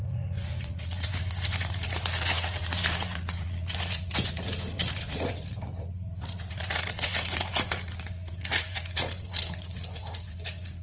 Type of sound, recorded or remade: remade